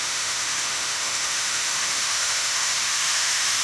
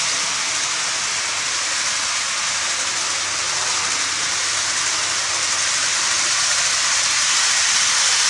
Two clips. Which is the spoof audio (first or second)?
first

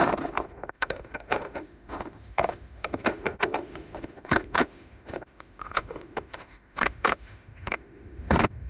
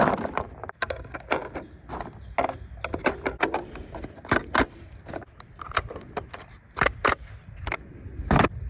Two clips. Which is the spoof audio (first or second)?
first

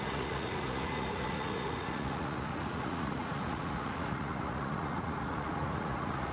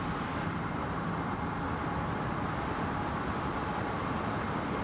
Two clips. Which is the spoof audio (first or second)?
first